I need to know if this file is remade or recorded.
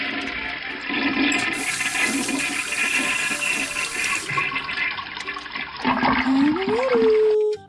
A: recorded